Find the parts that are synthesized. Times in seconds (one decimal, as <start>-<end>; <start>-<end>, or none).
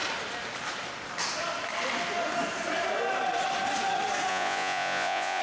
4.3-5.4